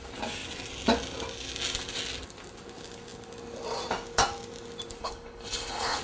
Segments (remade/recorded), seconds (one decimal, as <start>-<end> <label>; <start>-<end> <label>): 0.0-5.0 recorded; 5.0-6.0 remade